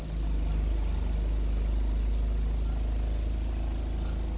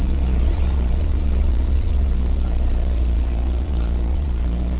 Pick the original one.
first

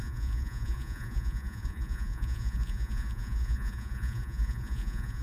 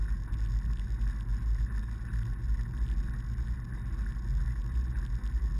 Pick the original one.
second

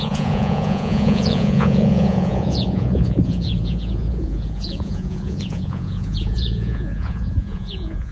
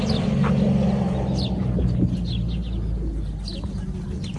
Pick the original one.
second